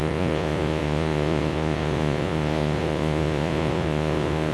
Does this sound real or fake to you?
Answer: fake